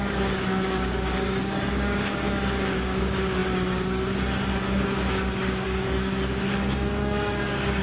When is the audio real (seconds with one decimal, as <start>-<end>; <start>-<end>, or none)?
none

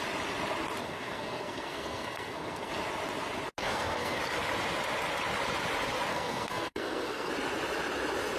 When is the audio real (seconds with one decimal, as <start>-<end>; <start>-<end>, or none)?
0.0-0.8; 2.7-3.6; 4.2-6.1; 7.3-8.4

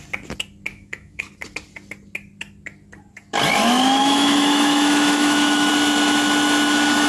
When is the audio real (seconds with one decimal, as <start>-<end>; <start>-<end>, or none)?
0.0-0.7; 1.3-4.0; 5.7-7.1

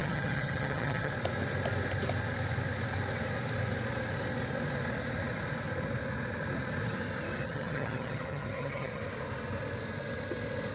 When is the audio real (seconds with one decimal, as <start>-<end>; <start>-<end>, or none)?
1.1-7.4; 9.0-10.7

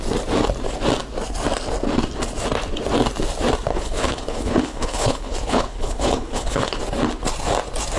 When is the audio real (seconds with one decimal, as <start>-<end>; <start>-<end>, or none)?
0.0-3.7; 6.8-8.0

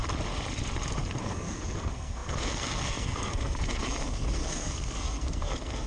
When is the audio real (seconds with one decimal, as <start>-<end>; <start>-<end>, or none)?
0.0-1.2

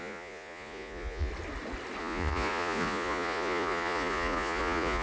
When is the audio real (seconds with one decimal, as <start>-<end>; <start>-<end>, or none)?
1.3-2.0